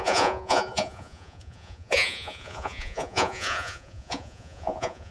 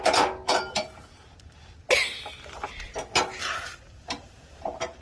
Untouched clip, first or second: second